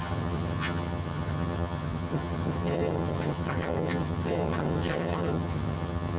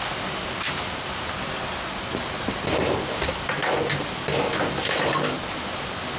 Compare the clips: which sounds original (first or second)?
second